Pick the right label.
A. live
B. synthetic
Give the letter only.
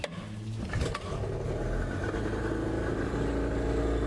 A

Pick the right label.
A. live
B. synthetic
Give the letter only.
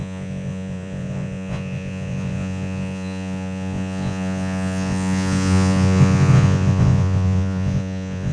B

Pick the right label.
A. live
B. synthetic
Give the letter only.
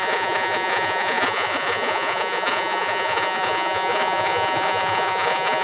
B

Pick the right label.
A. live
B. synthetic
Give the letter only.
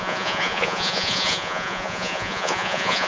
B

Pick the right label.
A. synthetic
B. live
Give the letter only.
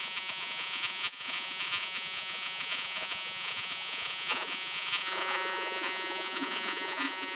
A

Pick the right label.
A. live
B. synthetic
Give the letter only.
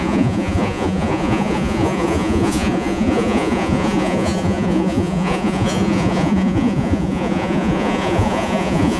B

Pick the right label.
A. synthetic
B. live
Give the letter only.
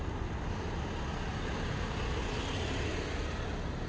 B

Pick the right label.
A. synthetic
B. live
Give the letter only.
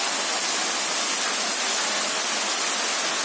B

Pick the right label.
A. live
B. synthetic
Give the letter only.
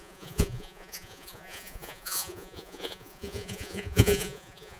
B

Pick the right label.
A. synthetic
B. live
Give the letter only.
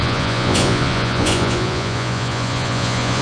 A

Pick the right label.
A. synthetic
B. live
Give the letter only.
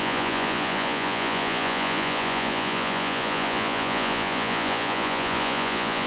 A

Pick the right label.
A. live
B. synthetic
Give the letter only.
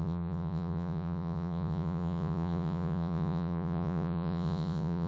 B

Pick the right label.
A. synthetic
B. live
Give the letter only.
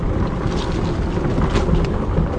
B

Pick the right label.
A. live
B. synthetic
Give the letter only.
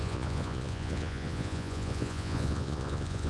B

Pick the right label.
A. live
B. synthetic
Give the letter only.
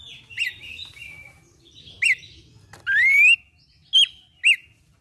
A